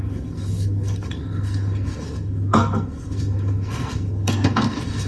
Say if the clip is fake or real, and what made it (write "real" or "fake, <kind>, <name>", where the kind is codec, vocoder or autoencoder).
fake, codec, SNAC